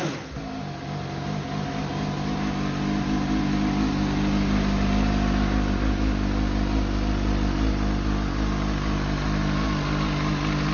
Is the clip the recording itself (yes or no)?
yes